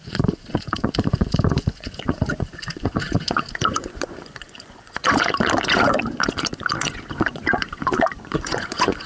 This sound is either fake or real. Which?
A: fake